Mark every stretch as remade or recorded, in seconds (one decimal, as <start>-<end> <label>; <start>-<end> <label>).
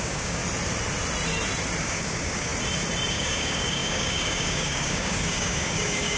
0.0-0.4 remade; 0.4-1.8 recorded; 1.8-2.5 remade; 2.5-3.1 recorded; 3.1-6.2 remade